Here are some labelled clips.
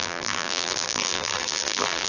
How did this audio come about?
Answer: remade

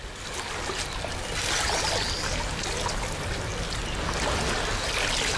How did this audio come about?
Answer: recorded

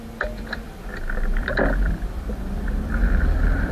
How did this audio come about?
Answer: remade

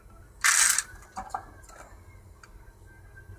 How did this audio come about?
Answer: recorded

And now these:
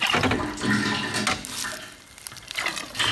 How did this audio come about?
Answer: recorded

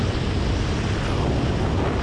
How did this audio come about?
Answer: recorded